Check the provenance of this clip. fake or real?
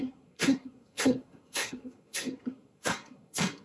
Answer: fake